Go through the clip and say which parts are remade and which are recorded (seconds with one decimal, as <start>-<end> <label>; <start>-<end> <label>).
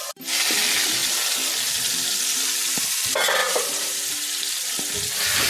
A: 0.0-3.4 recorded; 3.4-4.5 remade; 4.5-5.5 recorded